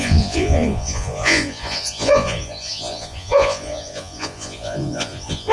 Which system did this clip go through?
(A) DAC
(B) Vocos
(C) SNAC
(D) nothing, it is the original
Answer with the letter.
B